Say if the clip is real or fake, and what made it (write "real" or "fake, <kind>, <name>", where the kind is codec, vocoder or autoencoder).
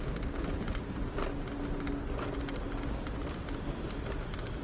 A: real